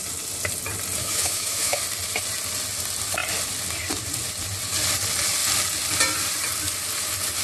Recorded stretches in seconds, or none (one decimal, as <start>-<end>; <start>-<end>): 0.0-1.0; 1.8-7.4